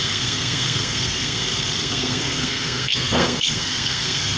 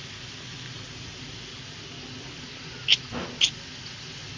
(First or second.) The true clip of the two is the second